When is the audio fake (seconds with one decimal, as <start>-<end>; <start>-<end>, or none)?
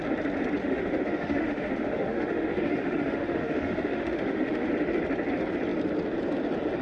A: 0.6-4.7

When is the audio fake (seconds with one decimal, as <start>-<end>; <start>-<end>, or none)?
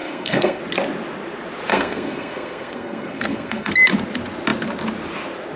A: 0.0-0.6; 1.7-3.7